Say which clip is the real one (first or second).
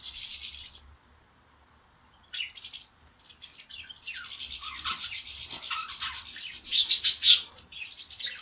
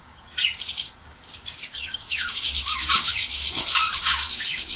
first